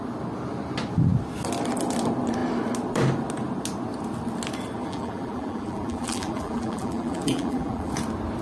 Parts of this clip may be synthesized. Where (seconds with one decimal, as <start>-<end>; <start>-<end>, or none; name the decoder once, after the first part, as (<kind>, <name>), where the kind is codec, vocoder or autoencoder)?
4.8-7.9 (vocoder, BigVGAN v2)